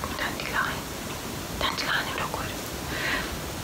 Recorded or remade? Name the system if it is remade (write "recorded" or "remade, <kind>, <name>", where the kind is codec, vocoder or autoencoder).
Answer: recorded